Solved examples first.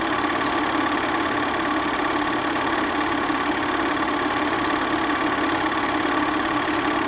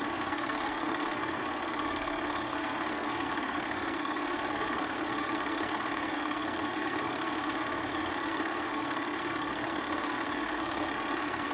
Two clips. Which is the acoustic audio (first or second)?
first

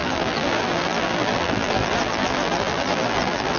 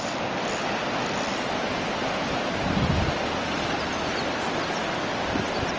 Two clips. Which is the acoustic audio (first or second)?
second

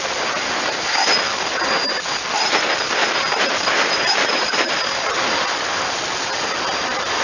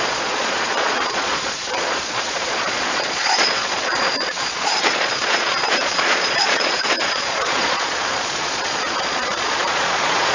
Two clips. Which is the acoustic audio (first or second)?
first